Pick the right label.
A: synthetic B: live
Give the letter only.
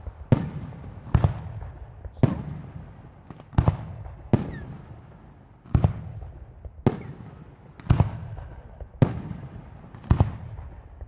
B